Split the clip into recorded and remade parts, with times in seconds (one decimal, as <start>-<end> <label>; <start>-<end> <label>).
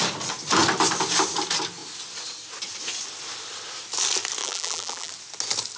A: 0.0-4.4 recorded; 4.4-5.1 remade; 5.1-5.8 recorded